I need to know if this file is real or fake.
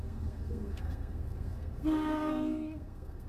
fake